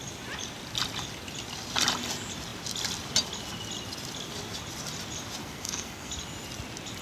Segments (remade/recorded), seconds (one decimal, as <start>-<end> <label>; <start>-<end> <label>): 0.0-5.4 recorded; 5.4-6.1 remade; 6.1-7.0 recorded